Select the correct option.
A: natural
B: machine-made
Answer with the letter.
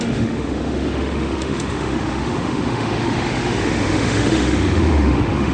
B